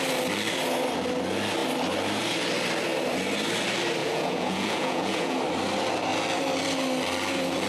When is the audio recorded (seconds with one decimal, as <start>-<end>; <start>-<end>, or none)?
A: 0.0-4.0; 5.4-7.7